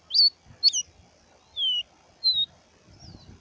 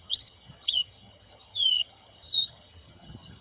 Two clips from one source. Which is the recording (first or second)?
first